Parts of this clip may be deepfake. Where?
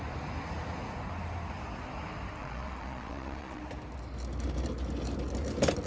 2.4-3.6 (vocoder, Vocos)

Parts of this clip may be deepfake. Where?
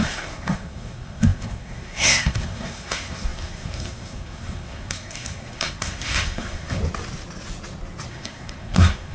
0.0-6.8 (codec, SNAC); 8.1-9.1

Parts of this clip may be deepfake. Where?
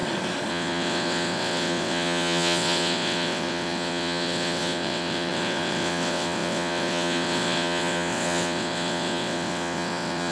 0.5-10.3 (vocoder, WaveNeXt)